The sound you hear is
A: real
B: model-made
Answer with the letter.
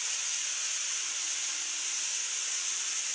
A